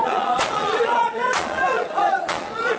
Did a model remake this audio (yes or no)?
yes